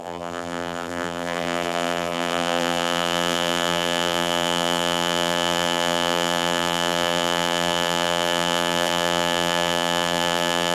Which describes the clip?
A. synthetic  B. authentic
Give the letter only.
A